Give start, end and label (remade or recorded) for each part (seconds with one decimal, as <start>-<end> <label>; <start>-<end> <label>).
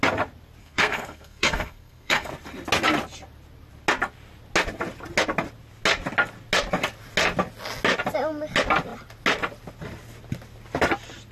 0.0-0.6 recorded; 0.6-2.3 remade; 2.3-11.3 recorded